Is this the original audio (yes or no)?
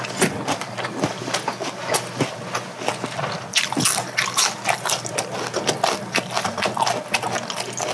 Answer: yes